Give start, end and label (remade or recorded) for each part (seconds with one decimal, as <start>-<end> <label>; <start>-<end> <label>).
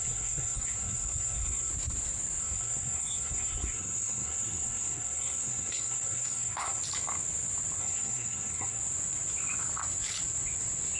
0.0-1.7 remade; 1.7-2.4 recorded; 2.4-6.8 remade; 6.8-7.8 recorded; 7.8-8.8 remade; 8.8-11.0 recorded